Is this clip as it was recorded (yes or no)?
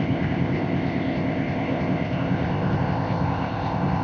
no